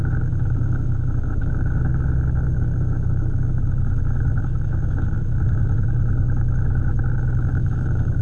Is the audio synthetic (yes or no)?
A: yes